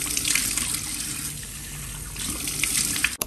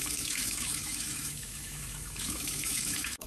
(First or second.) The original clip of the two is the first